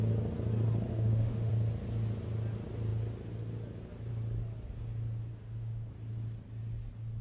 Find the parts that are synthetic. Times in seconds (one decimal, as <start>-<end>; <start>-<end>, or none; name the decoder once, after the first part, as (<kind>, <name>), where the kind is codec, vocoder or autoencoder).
0.9-1.5 (autoencoder, DAC-VAE); 5.3-5.9